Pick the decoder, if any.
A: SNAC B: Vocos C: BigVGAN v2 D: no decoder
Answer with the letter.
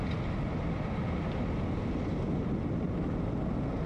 D